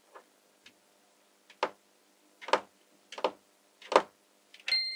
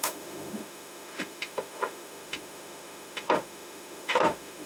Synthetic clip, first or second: second